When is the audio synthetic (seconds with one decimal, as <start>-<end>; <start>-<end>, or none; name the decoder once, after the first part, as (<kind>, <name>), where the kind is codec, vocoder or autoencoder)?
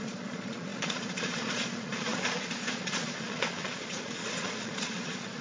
0.0-5.4 (vocoder, Vocos)